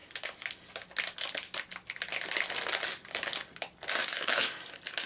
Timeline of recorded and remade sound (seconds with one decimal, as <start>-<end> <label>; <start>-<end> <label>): 0.0-4.0 recorded; 4.0-4.6 remade; 4.6-5.1 recorded